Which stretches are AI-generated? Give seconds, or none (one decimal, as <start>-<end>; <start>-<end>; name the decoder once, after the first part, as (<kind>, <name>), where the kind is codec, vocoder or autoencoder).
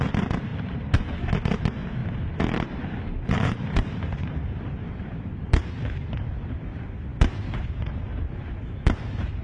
0.0-0.5 (vocoder, BigVGAN v2); 1.6-2.0; 3.3-9.4